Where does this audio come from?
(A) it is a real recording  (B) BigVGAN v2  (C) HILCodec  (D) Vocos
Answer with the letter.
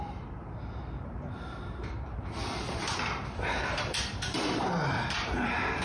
B